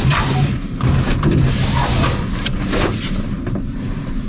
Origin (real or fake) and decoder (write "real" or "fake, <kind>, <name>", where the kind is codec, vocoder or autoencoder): fake, vocoder, BigVGAN v2